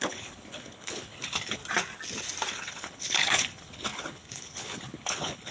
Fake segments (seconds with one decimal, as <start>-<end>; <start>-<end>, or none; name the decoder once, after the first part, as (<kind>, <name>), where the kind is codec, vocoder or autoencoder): 0.0-1.6 (codec, HILCodec); 2.5-5.5